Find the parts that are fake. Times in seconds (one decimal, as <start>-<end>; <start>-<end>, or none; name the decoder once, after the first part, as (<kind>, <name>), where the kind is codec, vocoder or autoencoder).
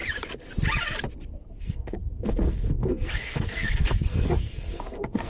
1.6-5.3 (codec, SNAC)